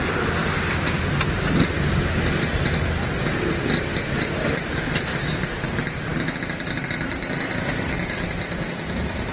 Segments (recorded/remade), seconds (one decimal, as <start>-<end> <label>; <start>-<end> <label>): 0.0-9.3 recorded